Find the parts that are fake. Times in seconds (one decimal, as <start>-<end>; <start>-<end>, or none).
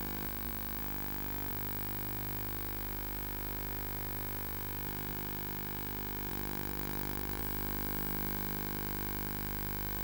6.3-7.4